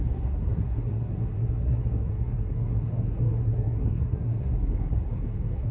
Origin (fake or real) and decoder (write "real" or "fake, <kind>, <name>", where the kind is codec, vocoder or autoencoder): fake, codec, SNAC